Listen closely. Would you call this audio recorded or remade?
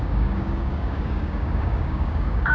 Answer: remade